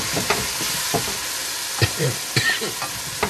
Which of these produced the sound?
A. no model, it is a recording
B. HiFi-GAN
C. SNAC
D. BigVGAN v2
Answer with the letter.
D